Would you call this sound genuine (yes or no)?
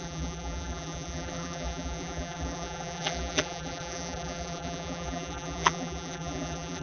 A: no